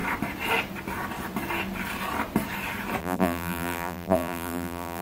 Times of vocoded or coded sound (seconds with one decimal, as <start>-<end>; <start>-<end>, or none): 3.0-5.0